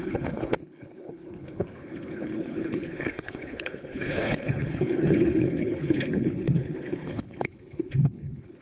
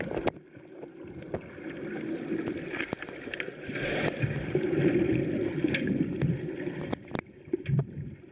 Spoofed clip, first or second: first